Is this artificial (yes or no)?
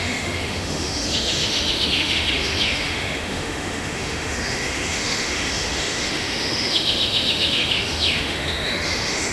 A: yes